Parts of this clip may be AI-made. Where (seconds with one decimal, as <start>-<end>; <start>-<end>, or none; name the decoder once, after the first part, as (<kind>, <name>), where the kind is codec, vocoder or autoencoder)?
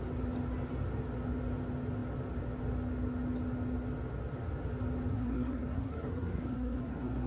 5.1-7.3 (codec, SNAC)